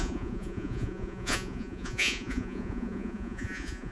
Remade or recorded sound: remade